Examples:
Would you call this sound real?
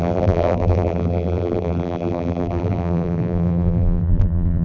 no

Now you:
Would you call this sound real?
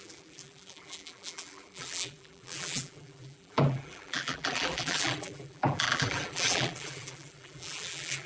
no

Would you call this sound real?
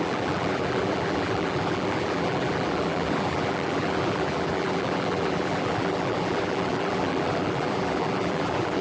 no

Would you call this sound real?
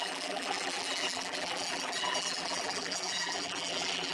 no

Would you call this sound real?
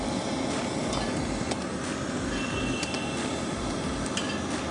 yes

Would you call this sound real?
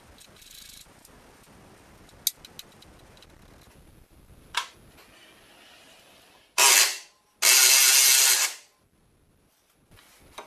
yes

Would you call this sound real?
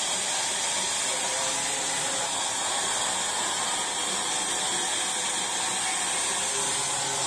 yes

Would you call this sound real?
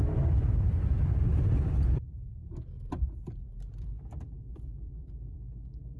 no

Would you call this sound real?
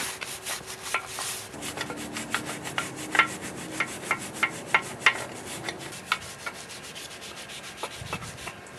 yes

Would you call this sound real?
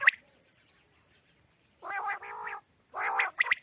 no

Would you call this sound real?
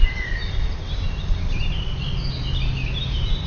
no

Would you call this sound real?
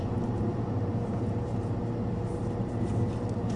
yes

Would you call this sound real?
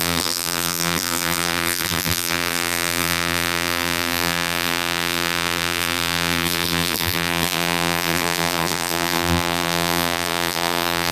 no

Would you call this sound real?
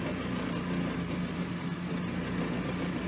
yes